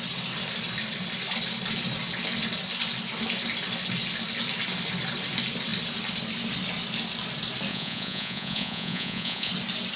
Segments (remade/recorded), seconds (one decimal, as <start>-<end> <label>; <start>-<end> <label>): 0.0-7.7 recorded; 7.7-9.5 remade; 9.5-10.0 recorded